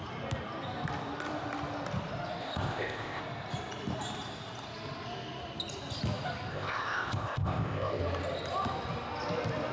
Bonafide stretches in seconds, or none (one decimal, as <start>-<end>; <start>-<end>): 0.0-2.4; 3.2-6.5; 8.0-9.7